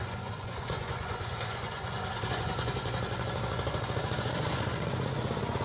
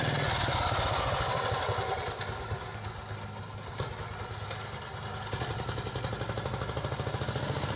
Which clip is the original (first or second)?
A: second